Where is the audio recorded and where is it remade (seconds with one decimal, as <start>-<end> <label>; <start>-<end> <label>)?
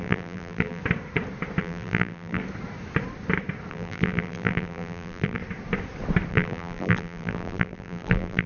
0.0-0.8 remade; 0.8-1.6 recorded; 1.6-2.4 remade; 2.4-3.7 recorded; 3.7-5.4 remade; 5.4-6.3 recorded; 6.3-8.5 remade